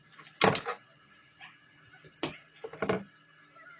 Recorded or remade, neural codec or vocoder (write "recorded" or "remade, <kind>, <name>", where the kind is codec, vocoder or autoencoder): recorded